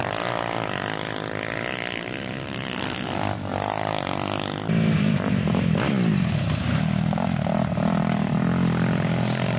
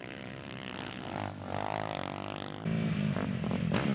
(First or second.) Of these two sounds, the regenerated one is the first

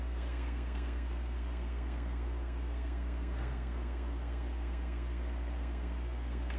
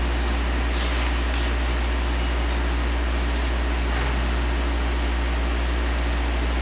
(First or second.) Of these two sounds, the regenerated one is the first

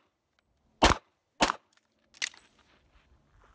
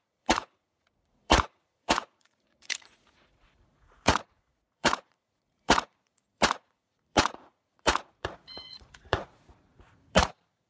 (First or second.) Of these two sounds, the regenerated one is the second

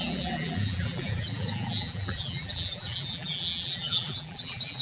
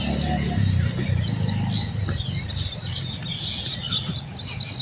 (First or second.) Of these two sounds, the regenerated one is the first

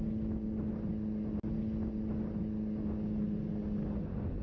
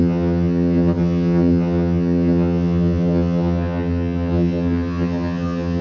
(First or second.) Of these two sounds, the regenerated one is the second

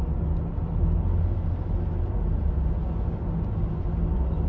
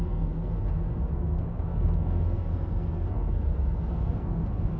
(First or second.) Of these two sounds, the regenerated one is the second